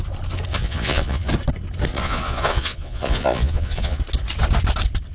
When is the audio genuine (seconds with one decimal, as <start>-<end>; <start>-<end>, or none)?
0.0-0.5; 1.3-1.9; 4.0-5.1